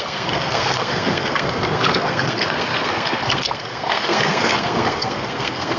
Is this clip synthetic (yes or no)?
yes